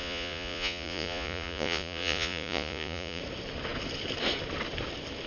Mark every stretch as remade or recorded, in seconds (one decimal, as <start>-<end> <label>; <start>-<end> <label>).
0.0-3.2 remade; 3.2-5.3 recorded

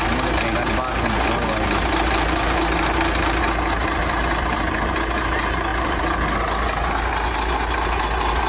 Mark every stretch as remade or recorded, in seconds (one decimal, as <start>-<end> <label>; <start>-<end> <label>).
0.0-3.8 recorded; 3.8-5.2 remade; 5.2-5.7 recorded; 5.7-6.4 remade; 6.4-8.5 recorded

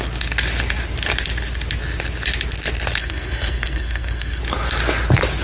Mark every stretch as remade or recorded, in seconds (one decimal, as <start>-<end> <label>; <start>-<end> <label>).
0.0-3.0 recorded; 3.0-4.4 remade; 4.4-5.4 recorded

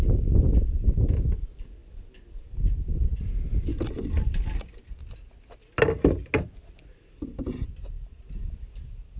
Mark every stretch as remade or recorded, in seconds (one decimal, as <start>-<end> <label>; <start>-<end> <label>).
0.0-9.2 recorded

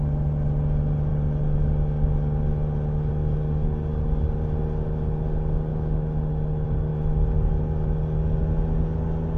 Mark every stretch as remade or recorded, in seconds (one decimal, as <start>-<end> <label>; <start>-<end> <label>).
0.0-5.7 recorded; 5.7-6.3 remade; 6.3-9.4 recorded

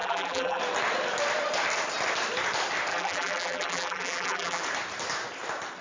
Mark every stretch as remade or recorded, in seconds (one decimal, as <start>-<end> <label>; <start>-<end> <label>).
0.0-0.6 remade; 0.6-2.9 recorded; 2.9-4.6 remade; 4.6-5.8 recorded